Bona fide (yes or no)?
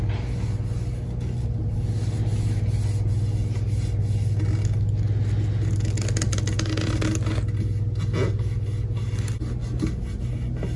yes